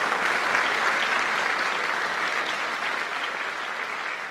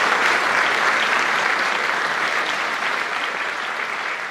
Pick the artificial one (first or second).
second